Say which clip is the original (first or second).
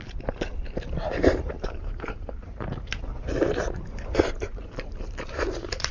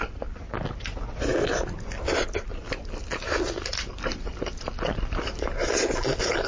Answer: second